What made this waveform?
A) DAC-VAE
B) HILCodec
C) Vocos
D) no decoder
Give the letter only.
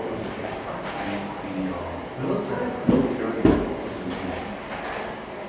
D